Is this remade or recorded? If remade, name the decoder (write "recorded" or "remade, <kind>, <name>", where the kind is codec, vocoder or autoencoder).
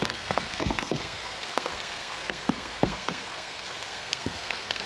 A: remade, codec, SNAC